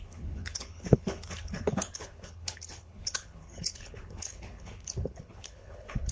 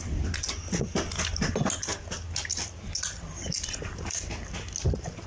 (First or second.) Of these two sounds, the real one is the second